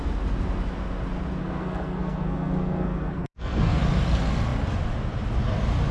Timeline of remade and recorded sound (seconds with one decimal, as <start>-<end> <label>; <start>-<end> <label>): 0.0-1.4 recorded; 1.4-3.8 remade; 3.8-5.9 recorded